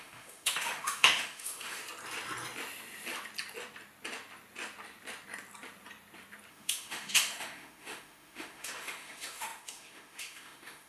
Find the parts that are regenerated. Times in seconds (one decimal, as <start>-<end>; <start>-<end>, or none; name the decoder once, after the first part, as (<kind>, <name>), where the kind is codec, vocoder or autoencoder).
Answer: 0.0-1.8 (autoencoder, DAC-VAE); 6.5-10.9